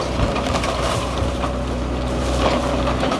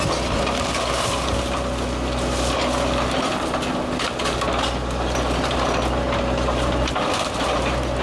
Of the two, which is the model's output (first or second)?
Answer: first